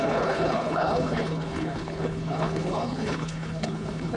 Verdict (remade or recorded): remade